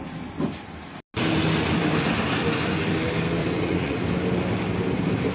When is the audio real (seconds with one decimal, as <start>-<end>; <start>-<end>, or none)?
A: 0.0-3.4; 4.0-5.3